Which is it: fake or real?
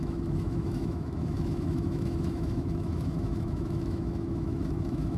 fake